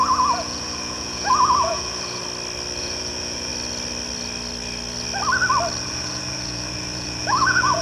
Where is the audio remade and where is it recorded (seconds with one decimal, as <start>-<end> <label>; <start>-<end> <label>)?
0.0-2.2 remade; 2.2-2.8 recorded; 2.8-3.5 remade; 3.5-5.8 recorded; 5.8-7.8 remade